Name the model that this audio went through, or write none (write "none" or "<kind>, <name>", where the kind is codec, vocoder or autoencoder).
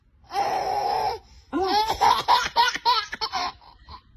vocoder, BigVGAN v2